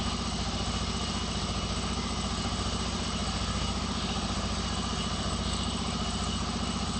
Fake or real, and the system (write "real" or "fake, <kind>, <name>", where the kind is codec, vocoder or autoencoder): real